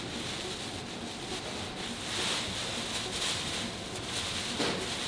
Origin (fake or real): real